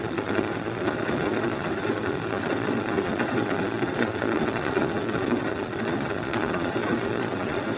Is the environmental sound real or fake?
fake